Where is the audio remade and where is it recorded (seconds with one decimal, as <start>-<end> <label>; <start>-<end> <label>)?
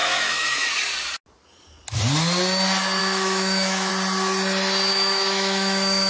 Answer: 0.0-0.7 remade; 0.7-3.0 recorded; 3.0-3.9 remade; 3.9-4.9 recorded; 4.9-6.1 remade